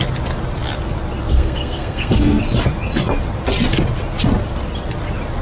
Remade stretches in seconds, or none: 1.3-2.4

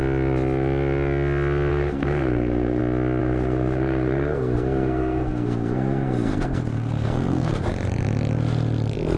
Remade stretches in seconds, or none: 1.7-2.8; 3.2-7.6

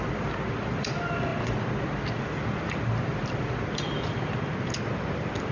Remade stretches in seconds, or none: none

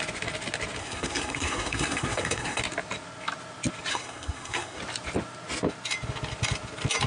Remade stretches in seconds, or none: 0.8-2.6; 3.9-4.8

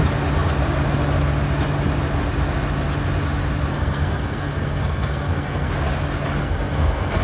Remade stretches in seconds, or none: 3.7-5.7; 6.4-7.2

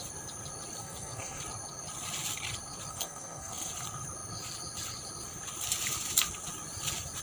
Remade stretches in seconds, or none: 0.8-1.4; 2.9-3.7